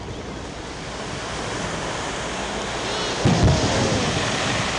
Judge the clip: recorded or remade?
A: recorded